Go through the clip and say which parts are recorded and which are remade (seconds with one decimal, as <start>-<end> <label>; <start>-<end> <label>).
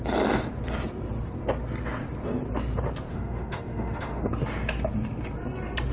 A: 0.0-3.1 recorded; 3.1-4.3 remade; 4.3-5.9 recorded